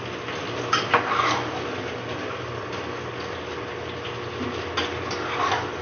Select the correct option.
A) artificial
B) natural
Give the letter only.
B